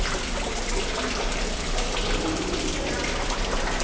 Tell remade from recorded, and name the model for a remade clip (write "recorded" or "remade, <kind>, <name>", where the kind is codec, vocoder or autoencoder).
recorded